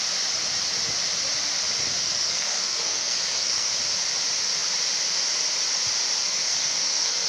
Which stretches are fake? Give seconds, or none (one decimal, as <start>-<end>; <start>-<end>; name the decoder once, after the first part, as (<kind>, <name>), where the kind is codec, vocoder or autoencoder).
2.0-3.7 (codec, SNAC); 6.2-7.3